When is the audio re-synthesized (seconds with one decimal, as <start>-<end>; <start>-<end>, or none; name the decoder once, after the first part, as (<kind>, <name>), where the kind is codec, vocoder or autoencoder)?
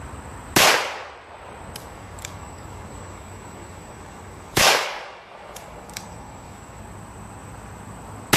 1.8-6.8 (codec, DAC)